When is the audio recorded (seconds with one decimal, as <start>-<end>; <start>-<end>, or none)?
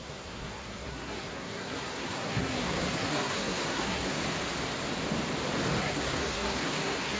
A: 4.2-5.8